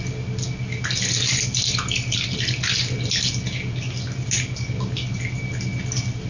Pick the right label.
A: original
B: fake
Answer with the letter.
A